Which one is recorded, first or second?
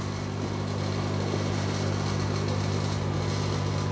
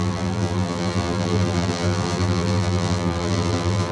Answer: first